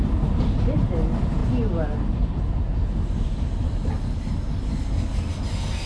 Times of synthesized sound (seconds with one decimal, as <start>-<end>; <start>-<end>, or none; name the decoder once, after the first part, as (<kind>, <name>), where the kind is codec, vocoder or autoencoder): none